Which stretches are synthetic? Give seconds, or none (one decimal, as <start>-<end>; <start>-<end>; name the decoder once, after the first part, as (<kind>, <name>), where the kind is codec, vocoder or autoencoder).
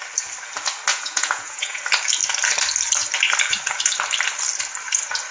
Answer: 0.9-1.8 (vocoder, Vocos)